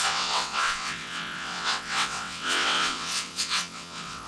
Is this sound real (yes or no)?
no